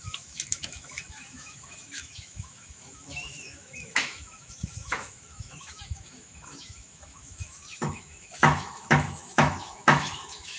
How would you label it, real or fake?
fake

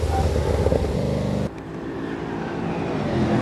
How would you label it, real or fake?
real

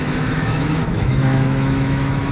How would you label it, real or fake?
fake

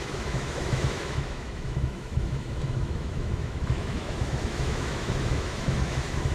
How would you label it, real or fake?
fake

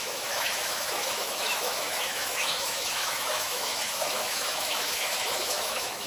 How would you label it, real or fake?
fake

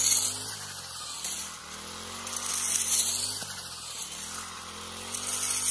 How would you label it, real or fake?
real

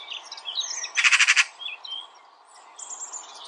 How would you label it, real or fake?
real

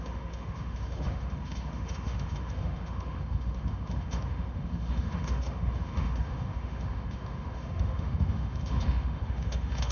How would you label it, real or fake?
fake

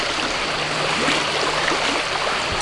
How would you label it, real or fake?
real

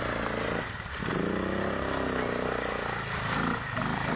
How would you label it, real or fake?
real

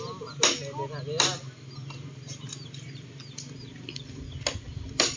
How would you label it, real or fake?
real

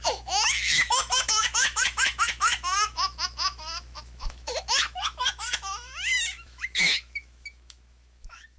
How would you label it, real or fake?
fake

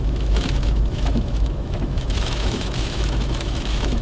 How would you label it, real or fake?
fake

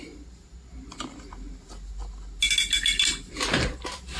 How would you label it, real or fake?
real